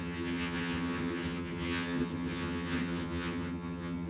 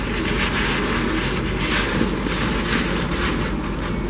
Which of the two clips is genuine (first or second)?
second